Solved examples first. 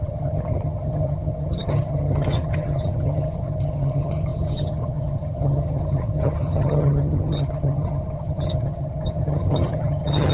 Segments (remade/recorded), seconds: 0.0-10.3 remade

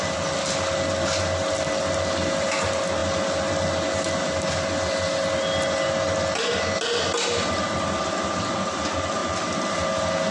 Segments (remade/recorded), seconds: 0.0-10.3 recorded

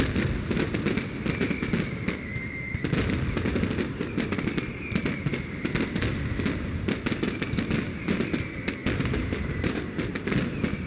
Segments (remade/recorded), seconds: 0.0-8.8 recorded; 8.8-9.8 remade; 9.8-10.9 recorded

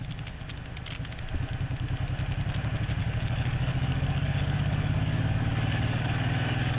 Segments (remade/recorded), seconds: 0.0-3.0 recorded; 3.0-6.8 remade

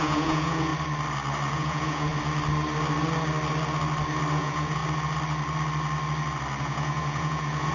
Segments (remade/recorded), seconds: 0.0-0.7 remade; 0.7-1.5 recorded; 1.5-2.1 remade; 2.1-4.3 recorded; 4.3-4.8 remade; 4.8-6.6 recorded; 6.6-7.7 remade

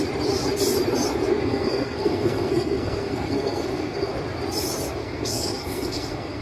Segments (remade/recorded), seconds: 0.0-1.3 recorded; 1.3-4.1 remade; 4.1-5.0 recorded; 5.0-6.4 remade